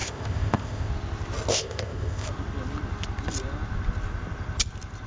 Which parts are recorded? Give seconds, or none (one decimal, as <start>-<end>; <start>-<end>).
0.9-1.5; 2.3-5.1